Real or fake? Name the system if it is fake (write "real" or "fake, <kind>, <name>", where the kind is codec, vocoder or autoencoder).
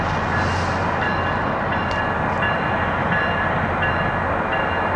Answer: real